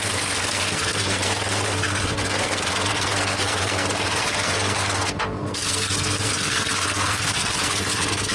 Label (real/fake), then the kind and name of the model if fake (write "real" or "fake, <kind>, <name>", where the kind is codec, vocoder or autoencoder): fake, codec, SNAC